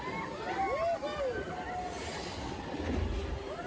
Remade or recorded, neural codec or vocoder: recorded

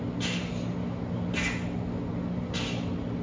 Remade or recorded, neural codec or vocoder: recorded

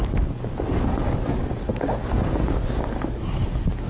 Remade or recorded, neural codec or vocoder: remade, codec, DAC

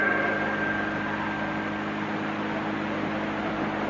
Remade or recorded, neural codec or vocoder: recorded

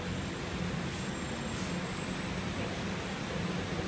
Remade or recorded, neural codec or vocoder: recorded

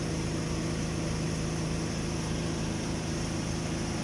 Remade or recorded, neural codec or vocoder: recorded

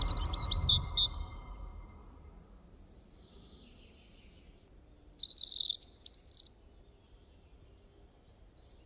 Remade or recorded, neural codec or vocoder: recorded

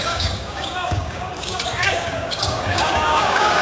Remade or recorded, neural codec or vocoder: remade, codec, DAC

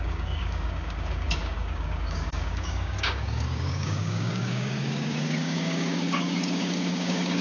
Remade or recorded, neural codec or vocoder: remade, codec, DAC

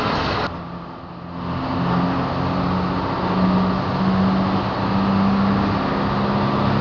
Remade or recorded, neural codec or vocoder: recorded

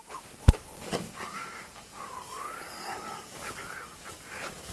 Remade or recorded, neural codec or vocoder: remade, codec, DAC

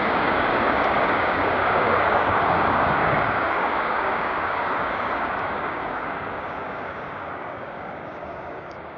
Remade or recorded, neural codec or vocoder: remade, codec, DAC